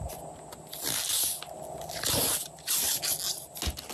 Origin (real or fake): real